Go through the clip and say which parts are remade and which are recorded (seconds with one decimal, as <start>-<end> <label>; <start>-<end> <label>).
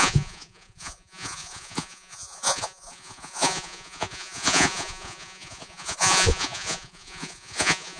0.0-8.0 remade